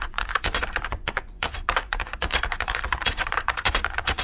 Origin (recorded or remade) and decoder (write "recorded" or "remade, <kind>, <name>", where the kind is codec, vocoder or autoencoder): remade, vocoder, Vocos